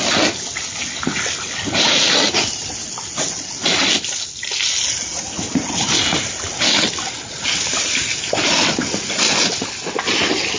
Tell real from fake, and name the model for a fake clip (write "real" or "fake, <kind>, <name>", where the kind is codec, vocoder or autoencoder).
real